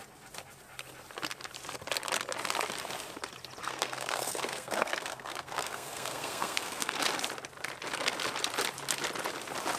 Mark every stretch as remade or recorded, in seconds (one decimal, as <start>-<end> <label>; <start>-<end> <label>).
0.0-3.6 recorded; 3.6-6.9 remade; 6.9-9.8 recorded